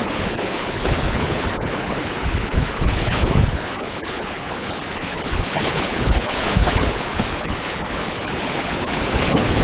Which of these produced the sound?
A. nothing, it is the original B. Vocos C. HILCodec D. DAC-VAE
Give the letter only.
C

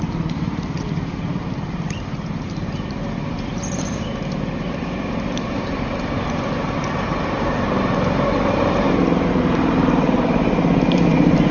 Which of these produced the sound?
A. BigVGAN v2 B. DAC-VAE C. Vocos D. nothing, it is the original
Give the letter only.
A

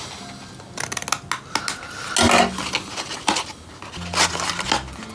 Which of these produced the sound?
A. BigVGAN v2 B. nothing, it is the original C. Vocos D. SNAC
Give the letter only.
B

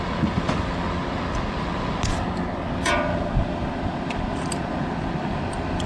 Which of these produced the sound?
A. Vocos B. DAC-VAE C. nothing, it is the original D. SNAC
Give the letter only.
C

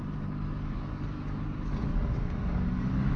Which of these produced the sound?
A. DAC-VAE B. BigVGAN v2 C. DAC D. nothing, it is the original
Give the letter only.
C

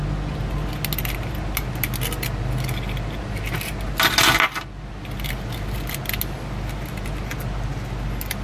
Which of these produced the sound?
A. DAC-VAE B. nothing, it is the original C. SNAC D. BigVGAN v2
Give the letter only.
B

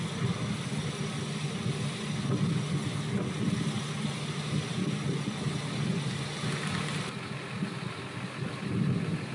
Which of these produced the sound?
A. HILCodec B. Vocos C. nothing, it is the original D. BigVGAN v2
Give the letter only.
C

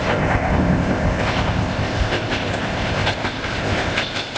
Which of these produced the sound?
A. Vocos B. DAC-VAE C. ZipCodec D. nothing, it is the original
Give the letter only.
C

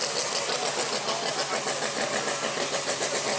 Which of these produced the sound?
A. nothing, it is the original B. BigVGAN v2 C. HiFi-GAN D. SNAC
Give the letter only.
A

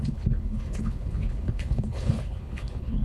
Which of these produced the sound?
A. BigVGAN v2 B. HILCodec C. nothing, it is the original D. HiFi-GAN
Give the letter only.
B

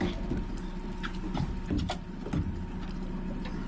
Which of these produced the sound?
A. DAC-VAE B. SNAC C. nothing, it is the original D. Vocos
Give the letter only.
C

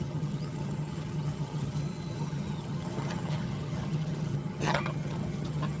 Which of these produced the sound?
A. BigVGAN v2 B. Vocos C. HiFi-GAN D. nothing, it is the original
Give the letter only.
C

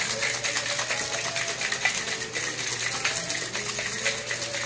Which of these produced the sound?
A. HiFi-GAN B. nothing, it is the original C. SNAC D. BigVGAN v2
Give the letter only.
B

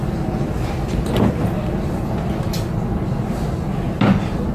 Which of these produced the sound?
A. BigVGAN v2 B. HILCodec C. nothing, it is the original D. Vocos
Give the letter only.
C